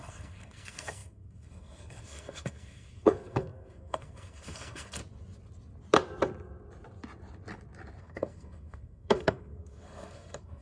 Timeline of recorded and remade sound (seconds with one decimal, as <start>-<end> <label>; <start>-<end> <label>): 0.0-5.0 remade; 5.0-8.0 recorded; 8.0-10.6 remade